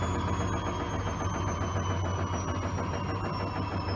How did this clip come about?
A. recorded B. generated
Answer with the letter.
A